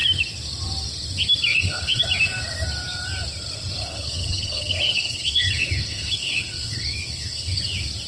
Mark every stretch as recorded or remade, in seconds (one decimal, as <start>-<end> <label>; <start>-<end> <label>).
0.0-1.5 recorded; 1.5-2.0 remade; 2.0-3.8 recorded; 3.8-7.6 remade; 7.6-8.1 recorded